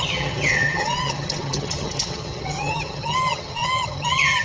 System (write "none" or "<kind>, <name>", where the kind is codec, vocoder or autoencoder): vocoder, HiFi-GAN